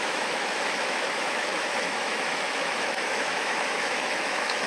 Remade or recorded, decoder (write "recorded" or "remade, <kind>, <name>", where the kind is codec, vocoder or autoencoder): remade, autoencoder, DAC-VAE